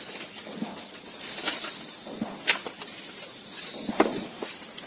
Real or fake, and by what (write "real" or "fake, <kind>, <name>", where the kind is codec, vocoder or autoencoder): real